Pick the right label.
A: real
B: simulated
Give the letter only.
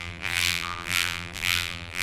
B